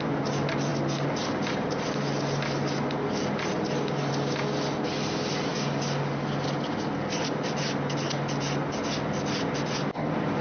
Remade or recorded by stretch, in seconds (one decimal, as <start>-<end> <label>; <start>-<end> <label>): 0.0-10.4 recorded